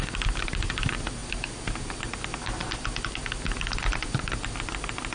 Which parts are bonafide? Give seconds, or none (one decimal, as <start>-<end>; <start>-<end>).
0.0-5.1